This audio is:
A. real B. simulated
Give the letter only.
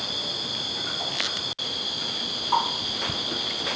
A